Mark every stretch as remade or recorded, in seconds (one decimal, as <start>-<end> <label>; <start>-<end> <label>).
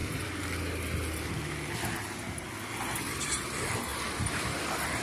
0.0-3.0 recorded; 3.0-5.0 remade